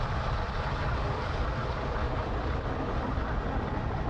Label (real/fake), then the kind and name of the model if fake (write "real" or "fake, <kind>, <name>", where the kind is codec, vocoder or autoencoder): real